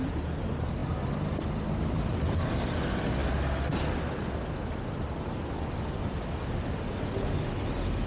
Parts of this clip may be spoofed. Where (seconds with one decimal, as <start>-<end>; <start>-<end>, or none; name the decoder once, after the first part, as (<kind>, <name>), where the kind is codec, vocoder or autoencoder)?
none